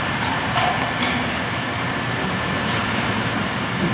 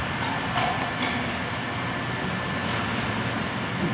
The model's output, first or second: first